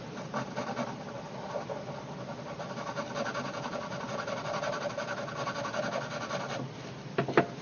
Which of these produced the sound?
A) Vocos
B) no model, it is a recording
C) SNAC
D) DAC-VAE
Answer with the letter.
B